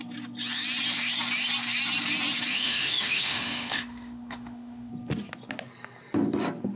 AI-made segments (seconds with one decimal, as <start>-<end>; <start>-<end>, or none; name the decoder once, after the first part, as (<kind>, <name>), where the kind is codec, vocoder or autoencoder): 2.5-4.9 (autoencoder, DAC-VAE)